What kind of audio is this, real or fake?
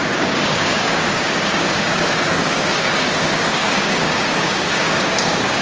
fake